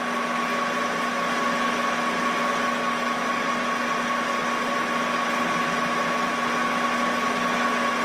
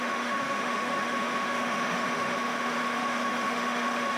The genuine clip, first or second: first